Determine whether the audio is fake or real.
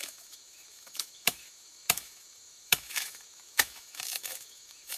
fake